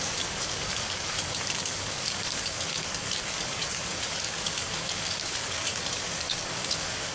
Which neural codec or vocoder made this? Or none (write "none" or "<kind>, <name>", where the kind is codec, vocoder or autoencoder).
codec, DAC